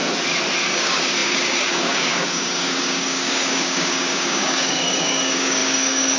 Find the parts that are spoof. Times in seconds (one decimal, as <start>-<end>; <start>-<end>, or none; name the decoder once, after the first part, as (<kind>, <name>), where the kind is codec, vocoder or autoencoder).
0.7-6.2 (codec, DAC)